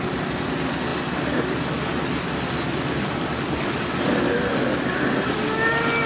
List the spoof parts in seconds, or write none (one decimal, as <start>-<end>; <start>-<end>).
none